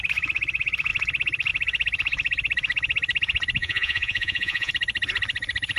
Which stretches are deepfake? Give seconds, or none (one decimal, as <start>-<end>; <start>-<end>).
3.6-4.7